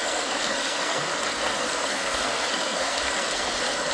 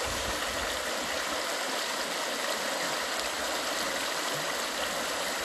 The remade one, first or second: first